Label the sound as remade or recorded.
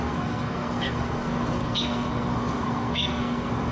remade